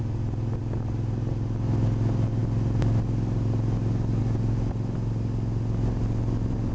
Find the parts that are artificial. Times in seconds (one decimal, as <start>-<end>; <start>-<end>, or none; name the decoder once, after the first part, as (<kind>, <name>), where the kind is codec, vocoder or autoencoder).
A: none